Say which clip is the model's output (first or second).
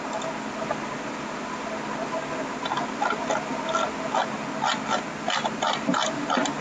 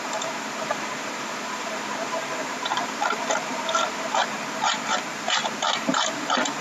second